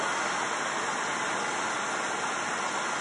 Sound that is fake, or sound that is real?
real